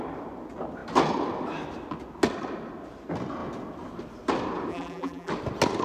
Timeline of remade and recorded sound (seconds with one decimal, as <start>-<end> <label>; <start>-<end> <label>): 0.0-4.7 recorded; 4.7-5.3 remade; 5.3-5.8 recorded